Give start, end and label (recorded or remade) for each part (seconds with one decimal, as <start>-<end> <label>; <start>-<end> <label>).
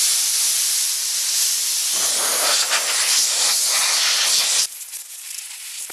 0.0-5.9 recorded